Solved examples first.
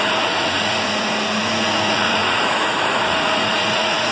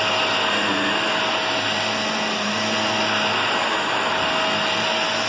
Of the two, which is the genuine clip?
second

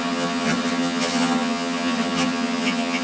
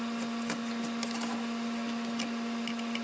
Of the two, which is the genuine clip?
second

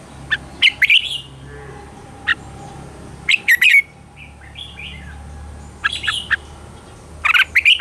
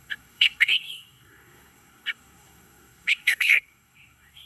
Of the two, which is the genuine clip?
first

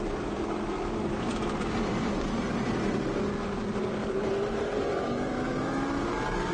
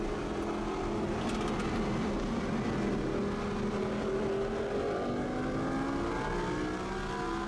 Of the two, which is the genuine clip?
second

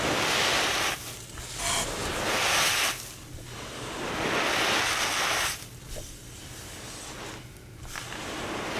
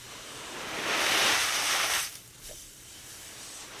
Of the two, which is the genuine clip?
first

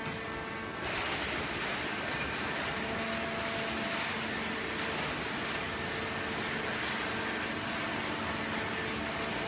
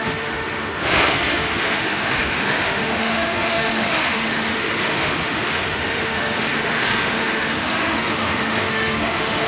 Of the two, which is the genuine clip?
first